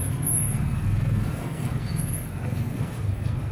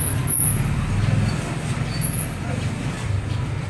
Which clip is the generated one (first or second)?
first